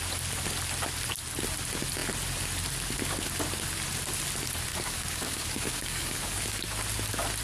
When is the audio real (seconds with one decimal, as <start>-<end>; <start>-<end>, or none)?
0.0-4.7; 6.6-7.4